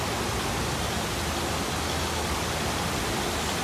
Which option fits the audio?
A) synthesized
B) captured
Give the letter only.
B